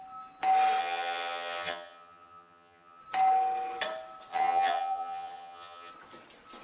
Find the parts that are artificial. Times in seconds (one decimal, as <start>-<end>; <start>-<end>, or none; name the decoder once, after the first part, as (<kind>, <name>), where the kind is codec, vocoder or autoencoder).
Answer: 0.8-3.0 (vocoder, HiFi-GAN); 4.3-5.9